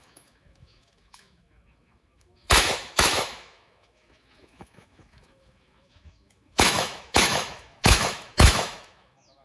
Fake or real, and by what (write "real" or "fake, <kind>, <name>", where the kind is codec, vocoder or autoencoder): fake, autoencoder, DAC-VAE